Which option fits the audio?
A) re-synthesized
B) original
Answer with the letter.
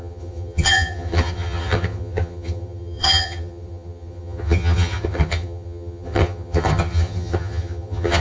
A